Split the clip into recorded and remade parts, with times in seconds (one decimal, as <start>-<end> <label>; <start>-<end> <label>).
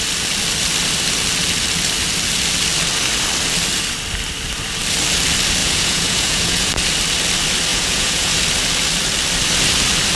0.0-5.6 recorded; 5.6-6.7 remade; 6.7-7.7 recorded; 7.7-8.3 remade; 8.3-10.2 recorded